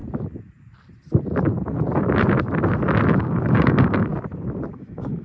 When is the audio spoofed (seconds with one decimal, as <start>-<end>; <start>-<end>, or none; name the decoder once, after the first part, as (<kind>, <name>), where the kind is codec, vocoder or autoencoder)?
3.1-4.1 (codec, DAC); 4.7-5.2